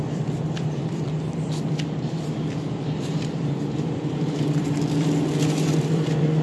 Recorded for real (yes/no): no